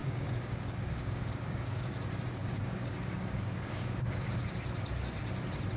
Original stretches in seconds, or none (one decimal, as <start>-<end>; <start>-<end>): 1.9-2.4; 4.5-5.8